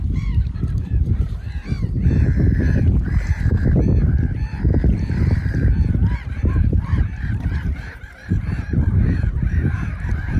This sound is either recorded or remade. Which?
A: remade